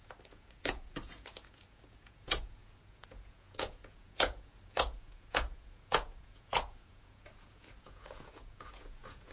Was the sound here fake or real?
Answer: fake